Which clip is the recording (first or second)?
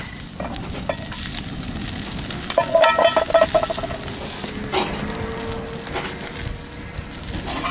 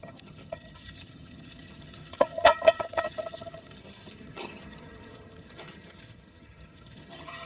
first